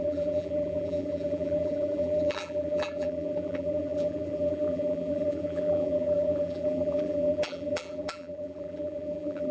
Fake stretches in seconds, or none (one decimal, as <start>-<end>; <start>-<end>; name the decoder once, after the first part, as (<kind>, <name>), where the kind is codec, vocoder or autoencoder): 0.0-9.5 (vocoder, BigVGAN v2)